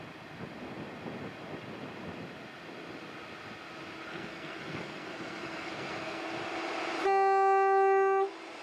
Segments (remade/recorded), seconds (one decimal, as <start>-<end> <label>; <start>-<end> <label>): 0.0-4.1 recorded; 4.1-6.2 remade; 6.2-8.6 recorded